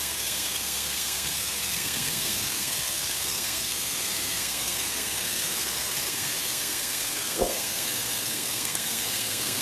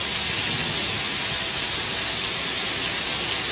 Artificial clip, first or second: first